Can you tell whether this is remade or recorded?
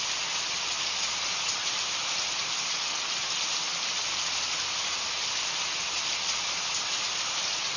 recorded